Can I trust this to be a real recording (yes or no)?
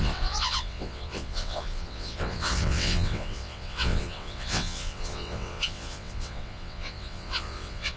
no